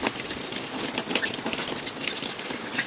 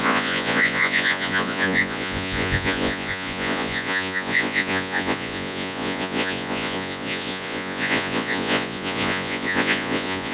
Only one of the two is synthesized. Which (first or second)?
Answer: second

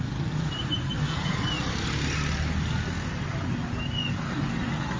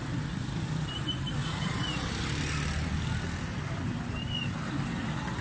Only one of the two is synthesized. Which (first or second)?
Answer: second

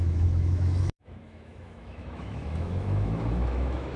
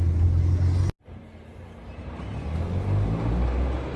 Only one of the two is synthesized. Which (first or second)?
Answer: first